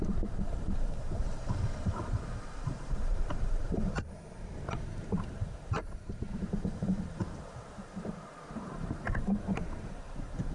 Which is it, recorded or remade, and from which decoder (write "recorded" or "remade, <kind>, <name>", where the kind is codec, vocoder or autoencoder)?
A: remade, vocoder, BigVGAN v2